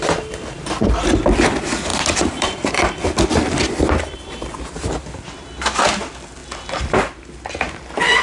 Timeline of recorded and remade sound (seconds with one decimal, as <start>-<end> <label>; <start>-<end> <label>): 0.0-1.9 recorded; 1.9-3.9 remade; 3.9-6.4 recorded; 6.4-7.0 remade; 7.0-8.2 recorded